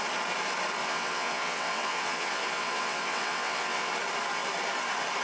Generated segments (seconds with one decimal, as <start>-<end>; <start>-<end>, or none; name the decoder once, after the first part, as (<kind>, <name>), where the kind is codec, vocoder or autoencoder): 0.8-3.9 (vocoder, WaveNeXt)